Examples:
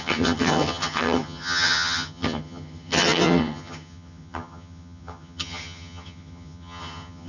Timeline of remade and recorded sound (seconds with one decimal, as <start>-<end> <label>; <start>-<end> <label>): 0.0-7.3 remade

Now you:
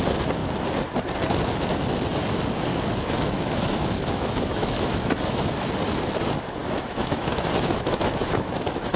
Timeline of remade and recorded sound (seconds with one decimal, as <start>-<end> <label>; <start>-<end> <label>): 0.0-2.7 recorded; 2.7-5.7 remade; 5.7-6.6 recorded; 6.6-9.0 remade

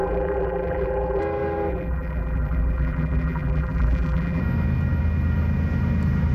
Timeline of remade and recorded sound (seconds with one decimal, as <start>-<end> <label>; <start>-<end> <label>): 0.0-1.2 remade; 1.2-1.7 recorded; 1.7-4.4 remade; 4.4-6.3 recorded

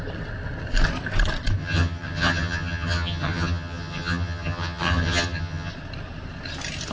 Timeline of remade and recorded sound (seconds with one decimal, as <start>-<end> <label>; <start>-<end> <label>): 0.0-1.6 recorded; 1.6-5.7 remade; 5.7-6.9 recorded

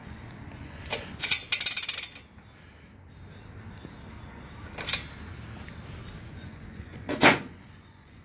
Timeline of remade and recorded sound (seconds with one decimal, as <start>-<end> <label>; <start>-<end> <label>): 0.0-1.4 remade; 1.4-6.3 recorded; 6.3-8.2 remade

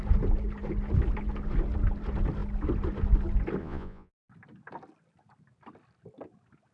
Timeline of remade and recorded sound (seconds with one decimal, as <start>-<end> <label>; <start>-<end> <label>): 0.0-3.6 recorded; 3.6-4.2 remade; 4.2-6.7 recorded